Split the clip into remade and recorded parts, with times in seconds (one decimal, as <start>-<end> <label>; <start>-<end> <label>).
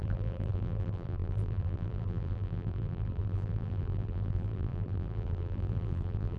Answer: 0.0-6.4 remade